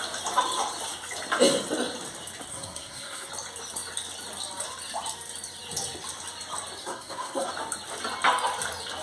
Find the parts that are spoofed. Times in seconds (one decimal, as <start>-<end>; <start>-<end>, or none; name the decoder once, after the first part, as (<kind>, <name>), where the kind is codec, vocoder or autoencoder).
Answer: 2.5-3.3 (codec, SNAC); 6.8-7.5